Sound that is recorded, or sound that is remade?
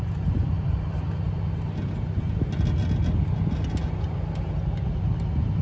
recorded